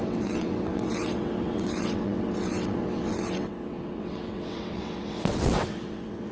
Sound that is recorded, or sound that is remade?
remade